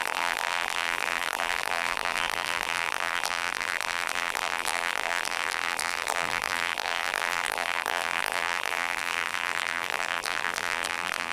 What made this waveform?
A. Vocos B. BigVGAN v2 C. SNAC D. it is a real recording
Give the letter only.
B